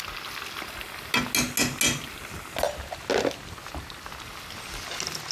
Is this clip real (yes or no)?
yes